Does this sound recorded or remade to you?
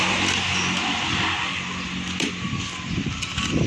recorded